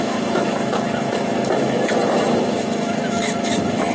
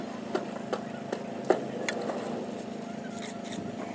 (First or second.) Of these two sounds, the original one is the second